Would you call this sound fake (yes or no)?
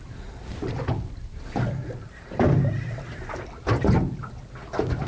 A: no